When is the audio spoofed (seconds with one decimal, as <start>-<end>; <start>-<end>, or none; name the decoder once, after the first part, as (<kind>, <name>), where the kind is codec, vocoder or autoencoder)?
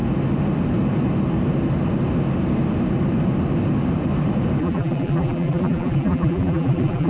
4.6-7.1 (vocoder, BigVGAN v2)